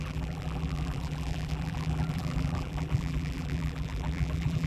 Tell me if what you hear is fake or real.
fake